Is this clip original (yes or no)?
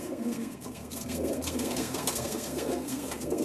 no